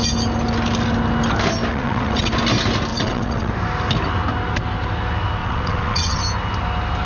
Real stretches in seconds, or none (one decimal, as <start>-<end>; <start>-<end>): 0.0-1.7; 2.3-2.9; 3.5-5.4; 6.2-7.0